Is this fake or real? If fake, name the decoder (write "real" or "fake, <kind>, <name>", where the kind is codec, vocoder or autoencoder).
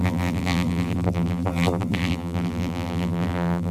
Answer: fake, vocoder, BigVGAN v2